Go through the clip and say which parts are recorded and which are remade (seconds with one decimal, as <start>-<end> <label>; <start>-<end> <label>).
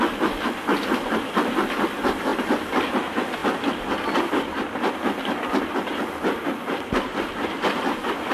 0.0-8.3 recorded